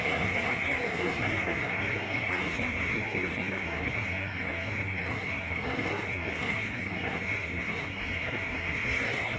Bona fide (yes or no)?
no